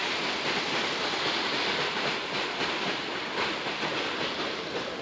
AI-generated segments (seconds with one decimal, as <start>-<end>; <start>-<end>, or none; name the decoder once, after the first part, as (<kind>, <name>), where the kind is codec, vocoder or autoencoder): none